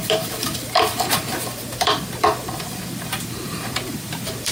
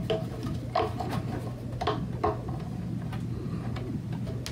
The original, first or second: second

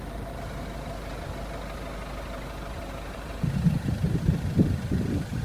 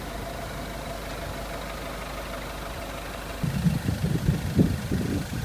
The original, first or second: second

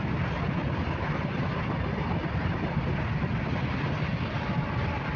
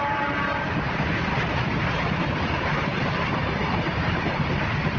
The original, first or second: first